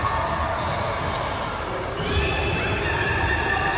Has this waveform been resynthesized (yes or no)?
yes